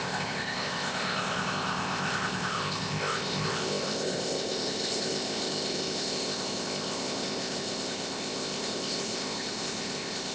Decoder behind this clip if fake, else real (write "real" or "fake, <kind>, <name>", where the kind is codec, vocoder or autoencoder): fake, codec, ZipCodec